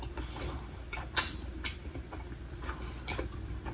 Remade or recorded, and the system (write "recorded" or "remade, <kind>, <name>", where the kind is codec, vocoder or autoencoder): remade, vocoder, BigVGAN v2